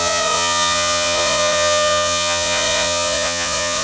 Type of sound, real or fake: fake